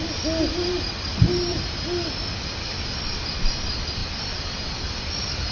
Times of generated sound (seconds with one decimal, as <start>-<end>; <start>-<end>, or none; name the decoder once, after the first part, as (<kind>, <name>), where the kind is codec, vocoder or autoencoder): 1.1-1.7 (vocoder, BigVGAN v2)